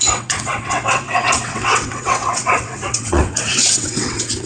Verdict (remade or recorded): remade